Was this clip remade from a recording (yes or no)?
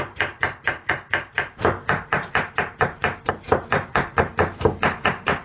yes